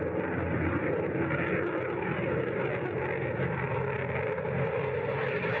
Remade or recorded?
recorded